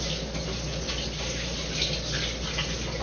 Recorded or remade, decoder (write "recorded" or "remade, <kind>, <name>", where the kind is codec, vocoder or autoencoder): recorded